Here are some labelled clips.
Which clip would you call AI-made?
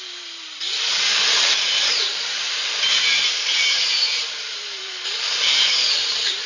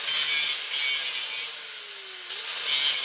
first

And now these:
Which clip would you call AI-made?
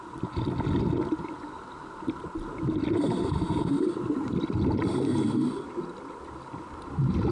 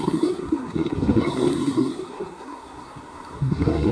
second